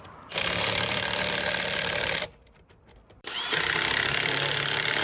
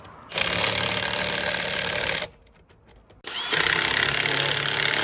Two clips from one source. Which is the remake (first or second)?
first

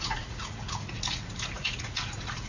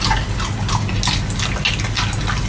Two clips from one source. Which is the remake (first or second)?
first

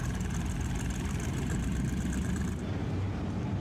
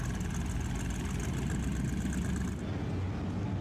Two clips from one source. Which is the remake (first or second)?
first